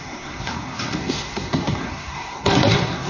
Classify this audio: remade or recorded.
remade